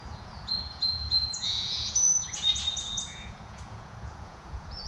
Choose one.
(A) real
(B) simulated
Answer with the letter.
B